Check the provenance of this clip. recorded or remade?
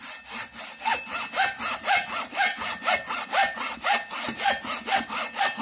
recorded